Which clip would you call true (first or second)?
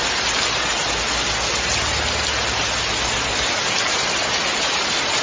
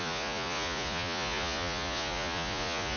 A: first